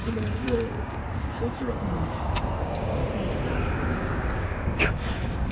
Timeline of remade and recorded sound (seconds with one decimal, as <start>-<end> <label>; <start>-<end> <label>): 0.0-1.0 remade; 1.0-2.6 recorded; 2.6-3.0 remade; 3.0-3.6 recorded; 3.6-5.5 remade